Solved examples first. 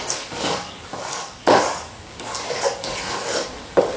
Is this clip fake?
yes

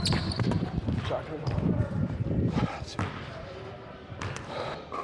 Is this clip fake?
yes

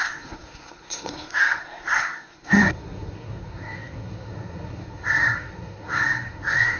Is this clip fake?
yes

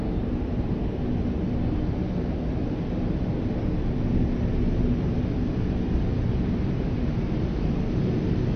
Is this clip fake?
no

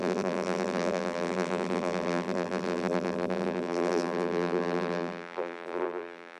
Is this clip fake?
yes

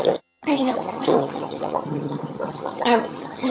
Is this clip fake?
yes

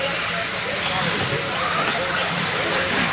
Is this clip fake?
no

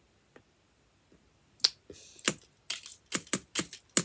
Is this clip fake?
no